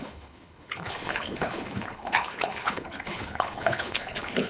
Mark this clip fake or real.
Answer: fake